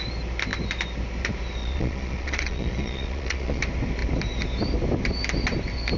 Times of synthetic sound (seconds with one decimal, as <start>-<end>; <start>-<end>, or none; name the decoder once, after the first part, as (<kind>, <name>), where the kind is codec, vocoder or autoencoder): 1.6-3.6 (vocoder, Vocos)